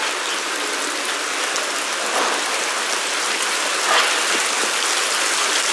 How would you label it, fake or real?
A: real